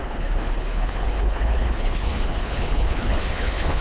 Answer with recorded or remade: remade